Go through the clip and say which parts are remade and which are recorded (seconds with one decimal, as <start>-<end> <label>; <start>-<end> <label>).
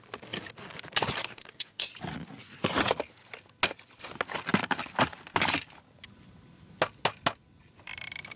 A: 0.0-1.2 recorded; 1.2-1.9 remade; 1.9-8.4 recorded